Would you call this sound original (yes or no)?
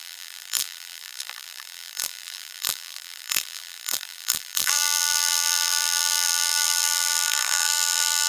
no